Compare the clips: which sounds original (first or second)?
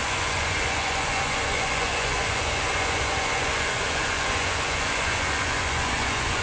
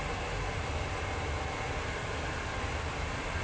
second